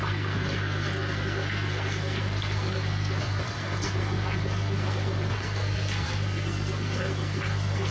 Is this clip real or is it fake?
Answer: fake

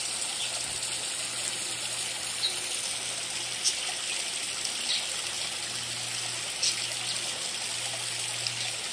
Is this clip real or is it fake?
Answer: real